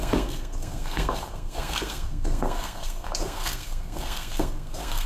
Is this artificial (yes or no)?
yes